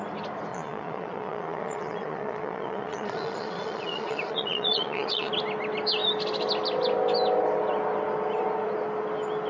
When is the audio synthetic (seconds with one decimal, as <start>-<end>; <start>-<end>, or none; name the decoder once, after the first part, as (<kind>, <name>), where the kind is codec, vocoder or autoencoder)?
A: 0.5-5.3 (vocoder, Vocos)